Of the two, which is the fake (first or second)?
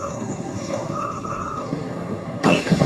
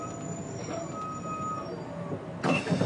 first